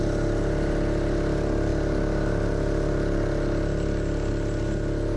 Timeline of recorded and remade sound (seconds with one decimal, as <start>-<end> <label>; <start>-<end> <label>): 0.0-5.2 recorded